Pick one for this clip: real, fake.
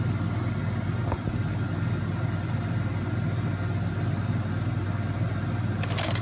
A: real